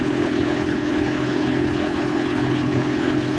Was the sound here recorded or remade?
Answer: remade